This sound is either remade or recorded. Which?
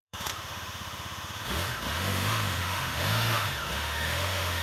remade